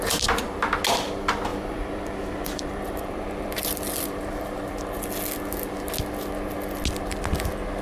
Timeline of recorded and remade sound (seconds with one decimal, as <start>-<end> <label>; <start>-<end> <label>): 0.0-1.5 recorded; 1.5-4.8 remade; 4.8-7.8 recorded